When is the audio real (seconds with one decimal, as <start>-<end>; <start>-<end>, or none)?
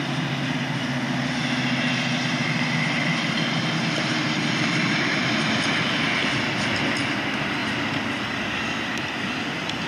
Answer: 0.0-9.9